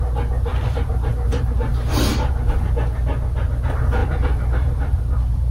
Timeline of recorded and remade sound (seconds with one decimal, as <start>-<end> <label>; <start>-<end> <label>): 0.0-0.5 recorded; 0.5-1.1 remade; 1.1-4.0 recorded; 4.0-5.5 remade